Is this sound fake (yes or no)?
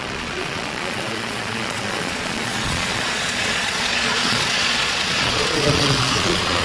yes